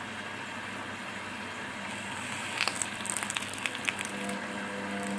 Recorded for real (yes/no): yes